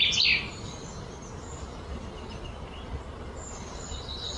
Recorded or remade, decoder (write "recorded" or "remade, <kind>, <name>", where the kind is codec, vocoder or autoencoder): recorded